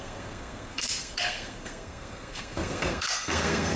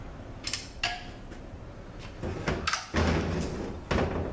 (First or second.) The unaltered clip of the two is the second